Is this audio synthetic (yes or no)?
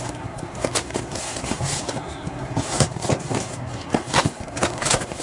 yes